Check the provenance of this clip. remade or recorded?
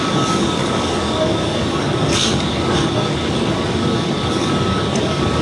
remade